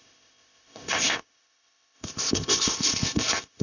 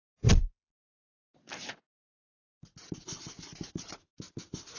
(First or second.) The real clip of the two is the second